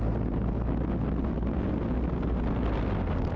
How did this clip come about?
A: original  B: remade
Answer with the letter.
A